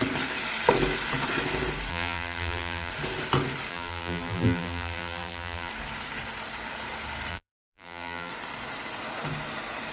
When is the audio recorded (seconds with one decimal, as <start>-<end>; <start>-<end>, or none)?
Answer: 0.0-1.9; 2.9-3.7; 5.7-7.3; 8.3-9.9